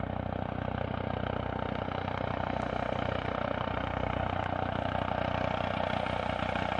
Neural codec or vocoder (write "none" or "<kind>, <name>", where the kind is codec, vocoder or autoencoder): none